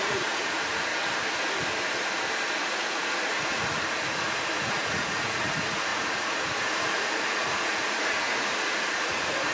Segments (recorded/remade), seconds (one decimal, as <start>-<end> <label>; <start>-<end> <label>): 0.0-0.9 remade; 0.9-2.6 recorded; 2.6-9.5 remade